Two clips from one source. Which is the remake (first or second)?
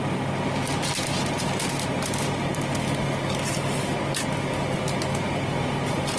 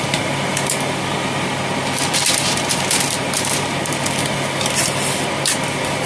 second